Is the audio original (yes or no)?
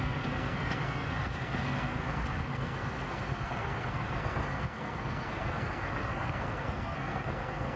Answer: no